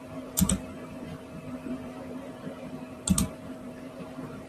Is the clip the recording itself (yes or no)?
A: no